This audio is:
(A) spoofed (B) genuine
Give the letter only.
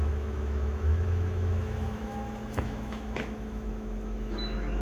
A